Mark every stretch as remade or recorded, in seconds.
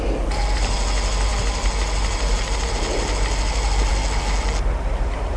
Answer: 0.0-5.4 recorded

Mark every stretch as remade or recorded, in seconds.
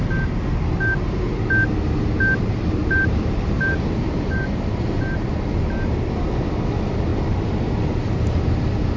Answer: 0.0-2.8 recorded; 2.8-5.3 remade; 5.3-7.1 recorded; 7.1-7.6 remade; 7.6-9.0 recorded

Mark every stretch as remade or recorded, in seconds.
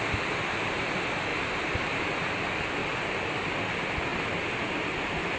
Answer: 0.0-1.3 recorded; 1.3-2.0 remade; 2.0-2.8 recorded; 2.8-3.4 remade; 3.4-4.1 recorded; 4.1-5.4 remade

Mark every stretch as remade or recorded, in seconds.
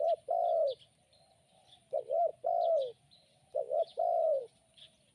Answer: 0.0-5.1 recorded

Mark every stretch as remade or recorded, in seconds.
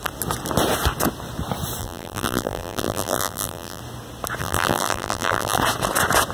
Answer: 0.0-1.8 recorded; 1.8-3.8 remade; 3.8-4.4 recorded; 4.4-5.6 remade; 5.6-6.3 recorded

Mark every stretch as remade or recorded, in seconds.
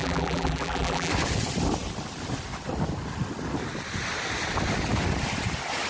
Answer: 0.0-1.1 remade; 1.1-5.9 recorded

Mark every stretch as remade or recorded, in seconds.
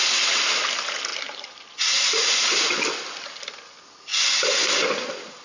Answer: 0.0-1.1 recorded; 1.1-2.3 remade; 2.3-5.4 recorded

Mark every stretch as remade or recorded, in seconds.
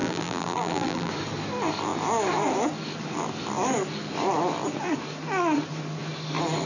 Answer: 0.0-1.1 remade; 1.1-6.7 recorded